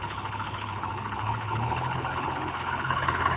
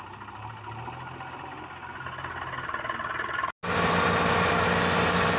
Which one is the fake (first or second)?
first